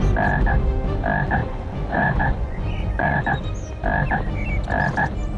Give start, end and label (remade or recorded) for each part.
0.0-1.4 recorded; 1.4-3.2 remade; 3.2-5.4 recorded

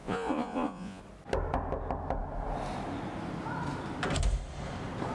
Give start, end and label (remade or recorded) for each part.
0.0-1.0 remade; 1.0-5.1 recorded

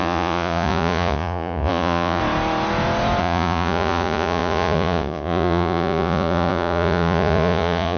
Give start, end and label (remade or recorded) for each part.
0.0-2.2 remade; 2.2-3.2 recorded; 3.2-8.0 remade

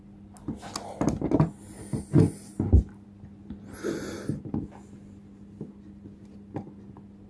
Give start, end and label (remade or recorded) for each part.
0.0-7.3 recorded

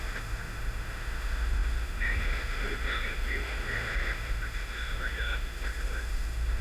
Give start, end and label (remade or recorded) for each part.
0.0-6.6 remade